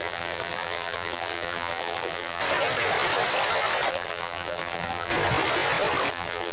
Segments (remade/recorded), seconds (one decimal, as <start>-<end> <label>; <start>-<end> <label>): 0.0-2.4 remade; 2.4-3.9 recorded; 3.9-5.1 remade; 5.1-6.1 recorded; 6.1-6.5 remade